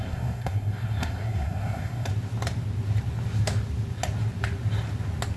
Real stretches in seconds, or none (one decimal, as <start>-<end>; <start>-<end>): 2.1-5.4